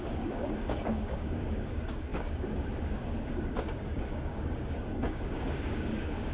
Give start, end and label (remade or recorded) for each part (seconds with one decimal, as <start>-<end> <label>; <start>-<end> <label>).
0.0-6.3 remade